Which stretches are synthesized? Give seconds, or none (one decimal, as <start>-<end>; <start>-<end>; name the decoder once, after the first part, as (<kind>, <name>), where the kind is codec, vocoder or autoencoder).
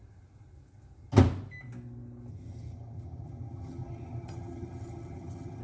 2.3-5.6 (vocoder, HiFi-GAN)